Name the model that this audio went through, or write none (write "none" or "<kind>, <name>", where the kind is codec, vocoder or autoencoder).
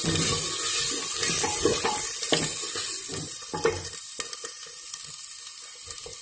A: none